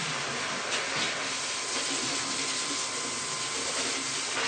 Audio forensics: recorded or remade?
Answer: remade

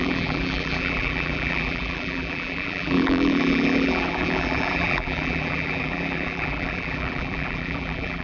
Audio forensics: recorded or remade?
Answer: remade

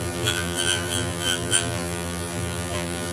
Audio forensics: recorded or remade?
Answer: remade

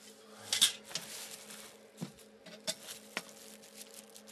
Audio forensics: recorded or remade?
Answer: recorded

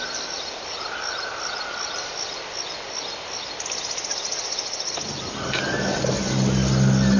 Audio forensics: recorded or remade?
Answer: recorded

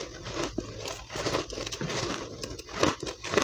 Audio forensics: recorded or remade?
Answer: recorded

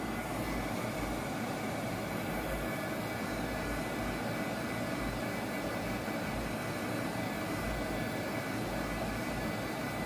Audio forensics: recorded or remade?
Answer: recorded